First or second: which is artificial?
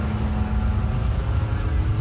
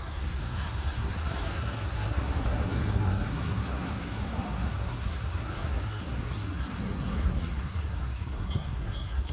second